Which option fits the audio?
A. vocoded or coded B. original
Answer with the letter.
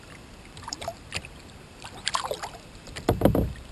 A